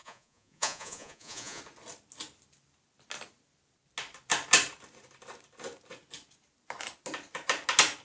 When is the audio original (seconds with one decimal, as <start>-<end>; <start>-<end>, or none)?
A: 1.6-8.0